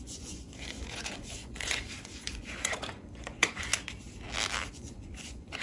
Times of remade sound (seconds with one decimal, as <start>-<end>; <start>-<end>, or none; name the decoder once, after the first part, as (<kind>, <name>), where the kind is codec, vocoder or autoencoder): 0.0-3.7 (vocoder, Vocos); 4.7-5.6